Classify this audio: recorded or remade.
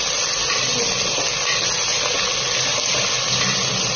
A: recorded